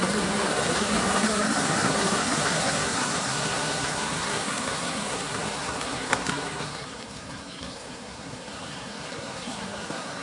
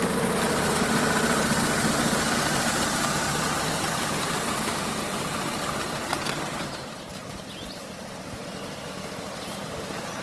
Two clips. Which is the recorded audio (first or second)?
second